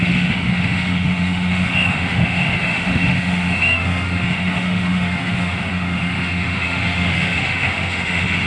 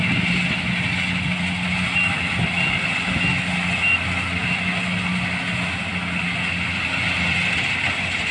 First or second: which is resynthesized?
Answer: first